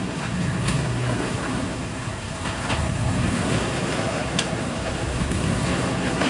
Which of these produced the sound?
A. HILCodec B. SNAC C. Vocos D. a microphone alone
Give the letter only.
B